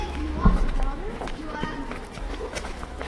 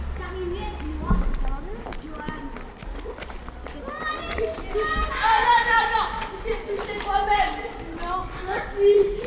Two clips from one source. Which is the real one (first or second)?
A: second